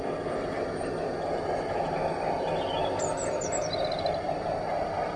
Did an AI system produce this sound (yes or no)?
no